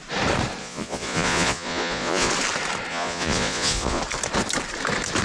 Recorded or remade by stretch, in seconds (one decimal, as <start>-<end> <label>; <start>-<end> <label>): 0.0-0.6 recorded; 0.6-2.3 remade; 2.3-2.9 recorded; 2.9-4.0 remade; 4.0-5.2 recorded